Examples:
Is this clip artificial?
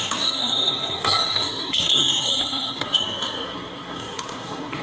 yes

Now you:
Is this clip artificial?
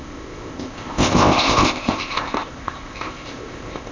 yes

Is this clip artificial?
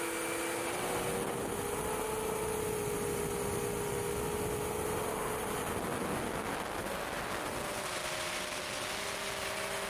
no